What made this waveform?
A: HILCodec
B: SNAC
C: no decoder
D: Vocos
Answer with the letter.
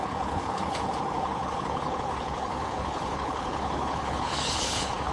A